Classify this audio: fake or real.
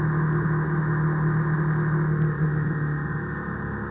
real